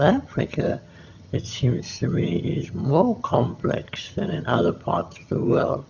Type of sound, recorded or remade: remade